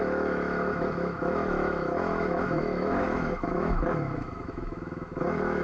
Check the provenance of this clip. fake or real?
fake